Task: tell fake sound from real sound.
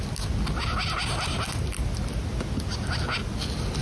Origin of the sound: real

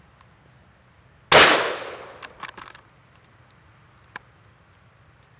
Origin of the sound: real